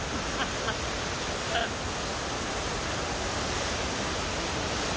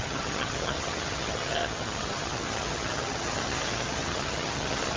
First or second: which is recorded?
first